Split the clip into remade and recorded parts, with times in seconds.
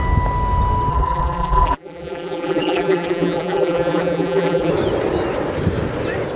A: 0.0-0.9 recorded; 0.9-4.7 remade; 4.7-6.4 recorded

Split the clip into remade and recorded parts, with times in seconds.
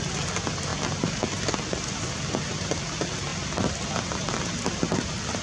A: 0.0-0.7 remade; 0.7-2.6 recorded; 2.6-3.3 remade; 3.3-3.9 recorded; 3.9-5.4 remade